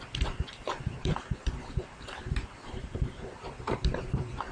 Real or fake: fake